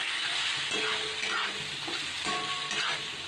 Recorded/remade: recorded